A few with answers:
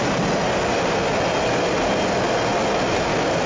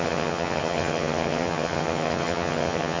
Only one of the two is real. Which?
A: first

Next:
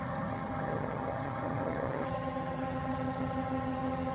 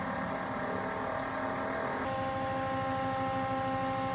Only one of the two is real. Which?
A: second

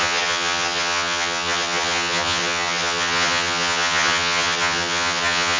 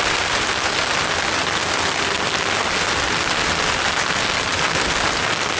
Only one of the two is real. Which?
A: second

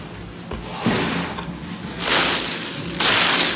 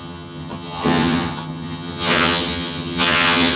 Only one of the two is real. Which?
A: first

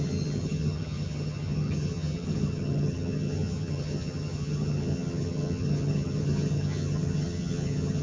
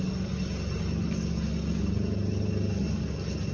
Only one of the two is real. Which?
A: second